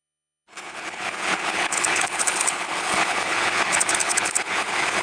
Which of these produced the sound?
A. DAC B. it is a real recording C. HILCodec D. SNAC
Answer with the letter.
C